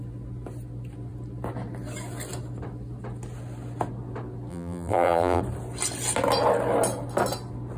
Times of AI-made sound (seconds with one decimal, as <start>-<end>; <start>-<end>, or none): 4.5-5.4